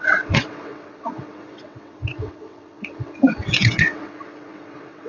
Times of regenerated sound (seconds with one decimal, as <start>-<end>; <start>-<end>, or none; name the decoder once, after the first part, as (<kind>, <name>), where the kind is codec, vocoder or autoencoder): 0.0-5.1 (vocoder, WaveNeXt)